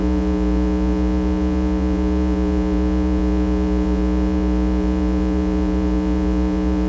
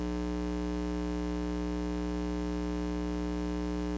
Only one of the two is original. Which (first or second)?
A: second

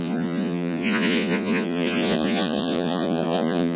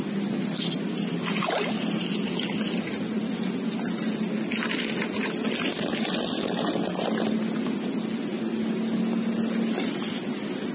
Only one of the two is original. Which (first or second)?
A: second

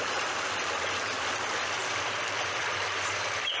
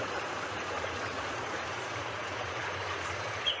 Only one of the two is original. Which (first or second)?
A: first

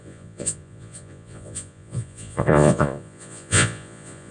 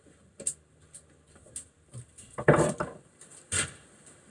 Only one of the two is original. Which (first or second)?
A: second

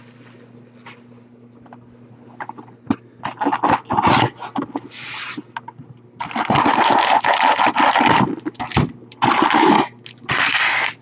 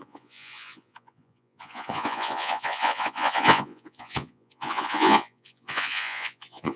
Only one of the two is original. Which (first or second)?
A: first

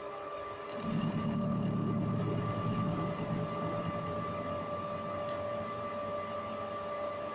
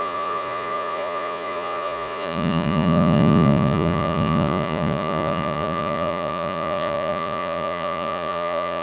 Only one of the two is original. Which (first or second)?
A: first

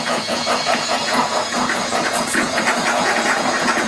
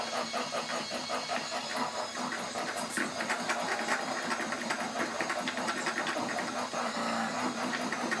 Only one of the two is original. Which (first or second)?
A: second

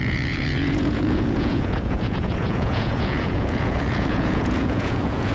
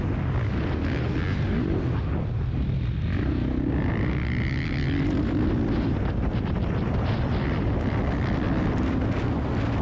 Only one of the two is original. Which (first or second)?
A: second